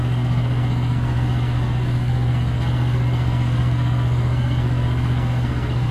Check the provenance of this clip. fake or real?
fake